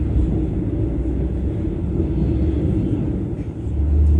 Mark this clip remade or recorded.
recorded